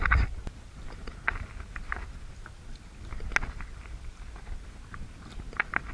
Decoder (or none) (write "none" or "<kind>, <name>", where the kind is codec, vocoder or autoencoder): none